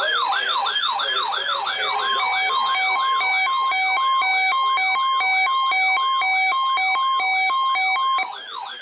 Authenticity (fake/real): real